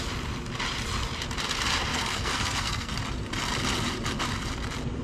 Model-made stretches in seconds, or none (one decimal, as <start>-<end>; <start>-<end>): 1.9-2.9